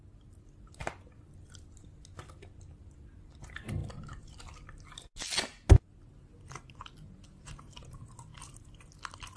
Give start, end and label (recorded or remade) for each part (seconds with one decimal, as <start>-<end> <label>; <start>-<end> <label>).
0.0-3.8 recorded; 3.8-4.4 remade; 4.4-9.4 recorded